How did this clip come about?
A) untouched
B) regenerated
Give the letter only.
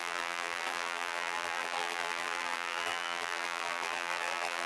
B